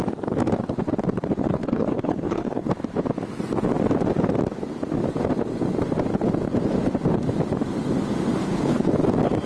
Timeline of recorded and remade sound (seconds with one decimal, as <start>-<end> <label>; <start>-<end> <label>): 0.0-1.4 recorded; 1.4-2.7 remade; 2.7-8.4 recorded; 8.4-8.9 remade; 8.9-9.5 recorded